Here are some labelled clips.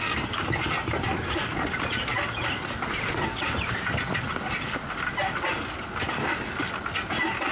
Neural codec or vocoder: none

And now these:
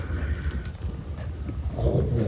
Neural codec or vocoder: none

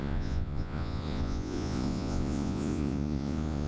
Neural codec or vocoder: vocoder, Vocos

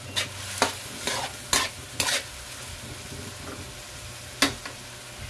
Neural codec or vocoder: none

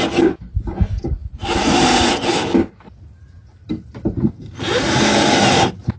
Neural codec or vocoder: none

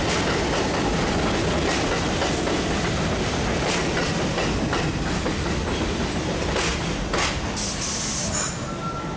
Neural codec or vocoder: none